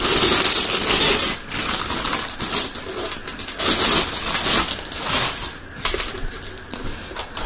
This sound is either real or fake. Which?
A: real